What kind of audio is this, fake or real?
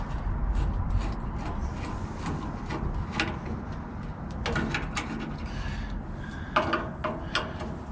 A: real